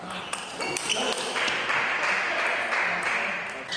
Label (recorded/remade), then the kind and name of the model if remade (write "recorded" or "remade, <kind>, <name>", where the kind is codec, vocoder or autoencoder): recorded